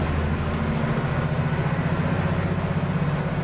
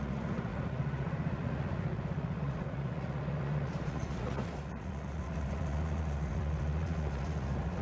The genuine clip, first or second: first